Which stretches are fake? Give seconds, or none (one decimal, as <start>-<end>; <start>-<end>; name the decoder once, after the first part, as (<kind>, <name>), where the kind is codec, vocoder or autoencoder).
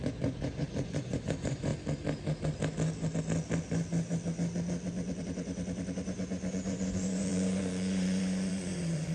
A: 0.0-1.7 (vocoder, Vocos); 6.5-9.1